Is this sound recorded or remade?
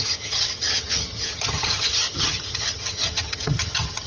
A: remade